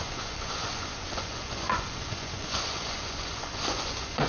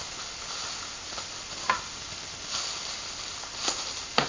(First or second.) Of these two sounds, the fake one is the first